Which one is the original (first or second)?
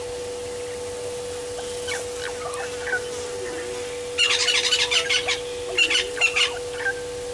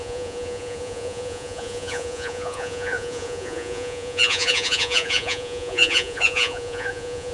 first